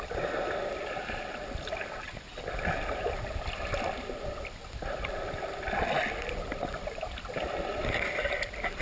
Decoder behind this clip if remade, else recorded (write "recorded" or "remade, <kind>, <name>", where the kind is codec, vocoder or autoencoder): recorded